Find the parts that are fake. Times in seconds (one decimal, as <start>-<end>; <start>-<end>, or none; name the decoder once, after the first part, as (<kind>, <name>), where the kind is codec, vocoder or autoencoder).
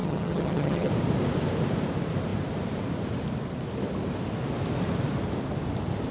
0.0-0.9 (vocoder, HiFi-GAN)